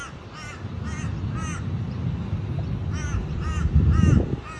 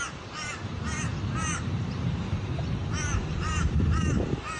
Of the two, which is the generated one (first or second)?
second